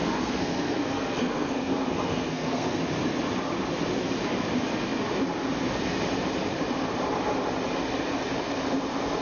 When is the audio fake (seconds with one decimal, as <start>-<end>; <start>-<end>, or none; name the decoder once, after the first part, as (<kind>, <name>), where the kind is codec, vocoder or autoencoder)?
0.0-2.8 (codec, SNAC)

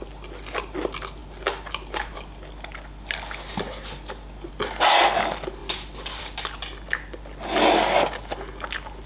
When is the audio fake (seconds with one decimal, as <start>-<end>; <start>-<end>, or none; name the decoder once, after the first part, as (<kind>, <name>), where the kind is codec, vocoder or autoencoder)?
none

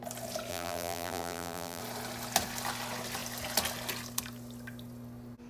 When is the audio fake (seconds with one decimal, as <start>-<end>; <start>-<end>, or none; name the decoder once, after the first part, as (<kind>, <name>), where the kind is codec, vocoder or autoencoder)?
0.5-1.8 (vocoder, BigVGAN v2)

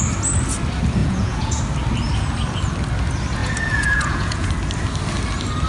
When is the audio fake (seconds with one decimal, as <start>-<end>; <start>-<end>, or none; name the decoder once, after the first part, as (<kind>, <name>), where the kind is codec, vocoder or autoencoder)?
1.0-1.6 (vocoder, Vocos); 3.4-4.5